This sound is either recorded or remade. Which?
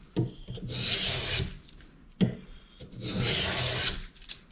recorded